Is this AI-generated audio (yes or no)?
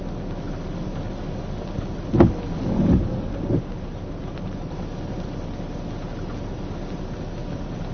no